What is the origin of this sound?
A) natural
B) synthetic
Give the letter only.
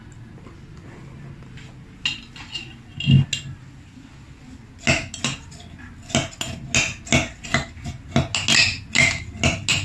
A